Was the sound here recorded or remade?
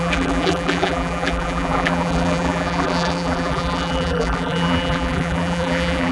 remade